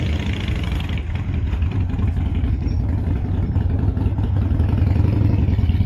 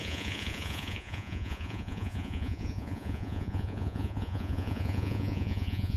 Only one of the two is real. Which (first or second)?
first